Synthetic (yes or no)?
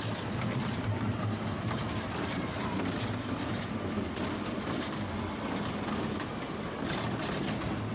no